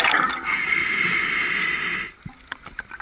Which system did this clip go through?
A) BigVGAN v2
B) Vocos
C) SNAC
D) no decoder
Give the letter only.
D